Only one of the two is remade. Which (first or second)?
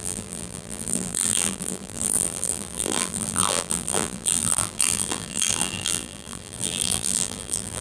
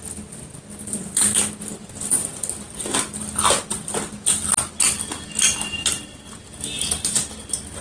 first